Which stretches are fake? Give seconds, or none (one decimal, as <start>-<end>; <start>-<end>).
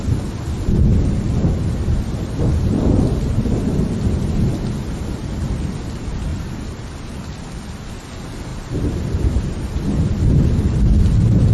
0.9-3.8; 6.3-7.9; 8.5-10.8